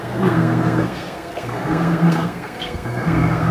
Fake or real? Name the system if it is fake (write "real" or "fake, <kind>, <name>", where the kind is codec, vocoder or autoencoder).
fake, codec, SNAC